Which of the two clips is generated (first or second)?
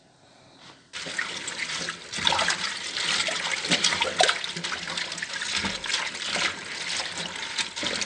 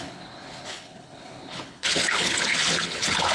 second